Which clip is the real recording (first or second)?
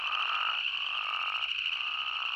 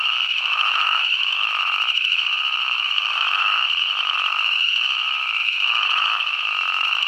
first